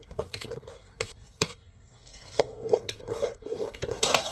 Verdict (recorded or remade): remade